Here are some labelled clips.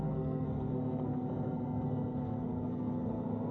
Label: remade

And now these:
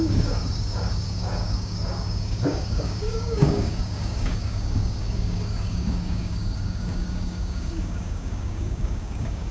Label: remade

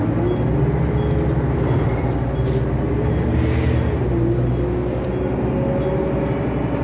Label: recorded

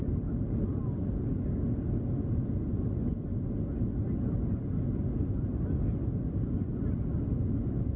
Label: recorded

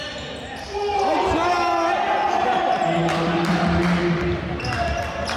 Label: recorded